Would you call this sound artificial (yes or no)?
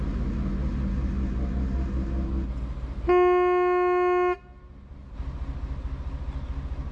no